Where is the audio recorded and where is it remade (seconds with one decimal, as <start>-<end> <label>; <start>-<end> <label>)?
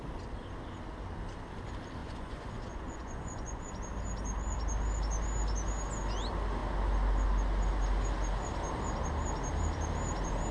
0.0-2.0 recorded; 2.0-3.6 remade; 3.6-10.5 recorded